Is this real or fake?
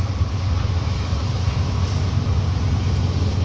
real